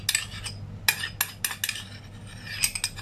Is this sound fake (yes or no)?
no